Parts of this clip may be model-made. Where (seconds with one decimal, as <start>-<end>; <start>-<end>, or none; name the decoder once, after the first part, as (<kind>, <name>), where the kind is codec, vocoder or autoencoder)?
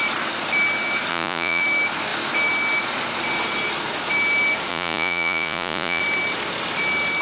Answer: 1.1-1.6 (vocoder, Vocos); 4.7-6.0